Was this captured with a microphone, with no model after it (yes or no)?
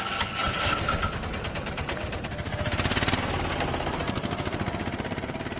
yes